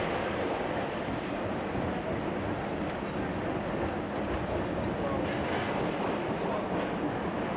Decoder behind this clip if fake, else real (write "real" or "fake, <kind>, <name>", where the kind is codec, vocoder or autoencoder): real